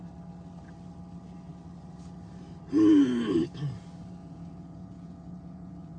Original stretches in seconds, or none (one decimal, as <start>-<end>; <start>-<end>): 0.0-4.2